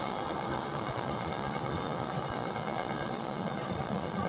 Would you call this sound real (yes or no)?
no